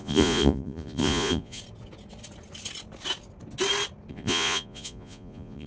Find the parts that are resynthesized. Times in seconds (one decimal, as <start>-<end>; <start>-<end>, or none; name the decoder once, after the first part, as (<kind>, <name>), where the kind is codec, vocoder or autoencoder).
0.0-1.6 (vocoder, Vocos); 4.1-5.7